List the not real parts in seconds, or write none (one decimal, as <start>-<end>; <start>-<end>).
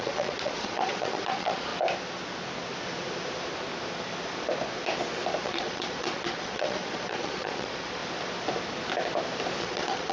0.0-1.7; 5.4-8.0; 9.6-10.1